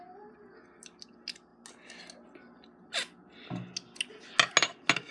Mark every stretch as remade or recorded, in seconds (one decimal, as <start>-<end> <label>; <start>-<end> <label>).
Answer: 0.0-5.1 recorded